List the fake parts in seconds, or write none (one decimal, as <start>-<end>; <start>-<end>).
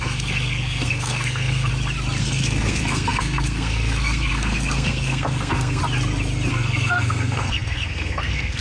0.0-1.7; 2.2-5.8; 6.5-8.6